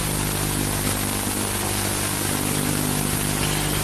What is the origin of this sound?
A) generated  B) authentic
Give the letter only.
B